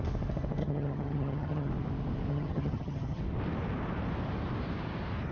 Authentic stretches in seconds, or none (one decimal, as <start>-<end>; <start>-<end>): 0.0-0.6; 1.7-2.3; 3.2-5.3